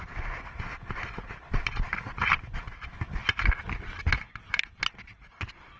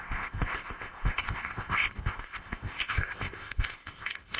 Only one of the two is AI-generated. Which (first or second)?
second